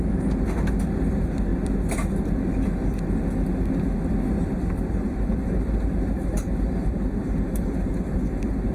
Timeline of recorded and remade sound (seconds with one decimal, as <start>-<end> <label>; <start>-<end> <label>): 0.0-4.4 recorded; 4.4-8.7 remade